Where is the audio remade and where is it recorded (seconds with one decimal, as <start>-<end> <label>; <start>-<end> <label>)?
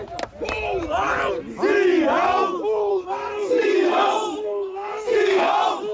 0.0-2.9 recorded; 2.9-5.4 remade; 5.4-5.9 recorded